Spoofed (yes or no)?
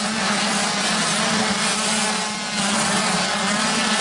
no